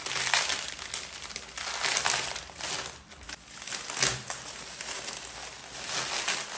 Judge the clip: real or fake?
real